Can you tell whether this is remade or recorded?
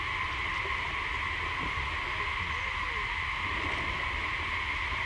recorded